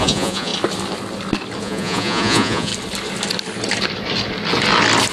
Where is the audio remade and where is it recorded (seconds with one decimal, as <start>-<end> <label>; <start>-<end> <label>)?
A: 0.0-0.5 remade; 0.5-1.6 recorded; 1.6-2.7 remade; 2.7-5.1 recorded